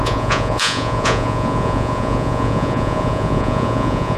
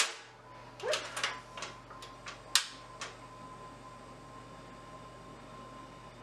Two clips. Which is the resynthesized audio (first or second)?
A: first